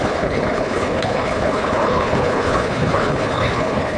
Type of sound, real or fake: fake